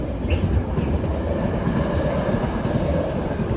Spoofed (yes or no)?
no